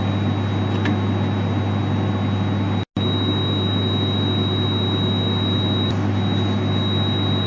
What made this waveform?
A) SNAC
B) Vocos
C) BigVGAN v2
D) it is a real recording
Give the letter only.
D